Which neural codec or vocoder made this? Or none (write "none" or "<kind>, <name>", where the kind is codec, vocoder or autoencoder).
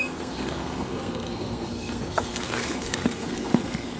codec, SNAC